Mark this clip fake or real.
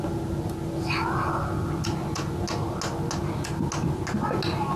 real